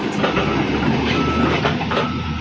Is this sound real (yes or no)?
yes